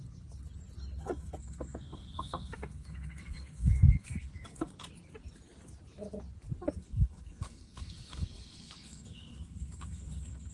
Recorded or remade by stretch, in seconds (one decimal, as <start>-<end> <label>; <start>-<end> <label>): 0.0-1.0 recorded; 1.0-4.7 remade; 4.7-6.8 recorded; 6.8-10.5 remade